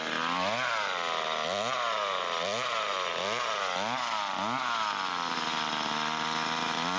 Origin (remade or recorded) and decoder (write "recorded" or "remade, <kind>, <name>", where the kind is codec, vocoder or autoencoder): recorded